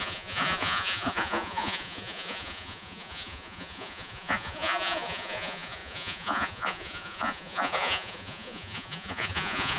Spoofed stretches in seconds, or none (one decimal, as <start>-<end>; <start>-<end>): 0.0-9.8